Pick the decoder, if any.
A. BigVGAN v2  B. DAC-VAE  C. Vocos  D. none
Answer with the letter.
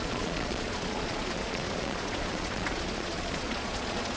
C